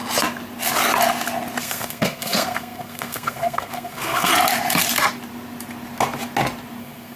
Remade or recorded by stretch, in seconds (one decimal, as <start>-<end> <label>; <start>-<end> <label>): 0.0-1.6 recorded; 1.6-4.3 remade; 4.3-6.8 recorded; 6.8-7.2 remade